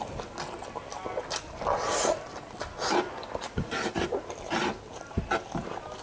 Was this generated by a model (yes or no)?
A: yes